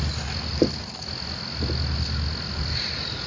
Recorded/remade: recorded